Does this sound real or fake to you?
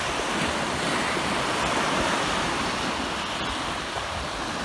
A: real